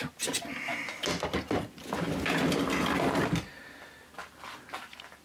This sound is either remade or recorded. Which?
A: recorded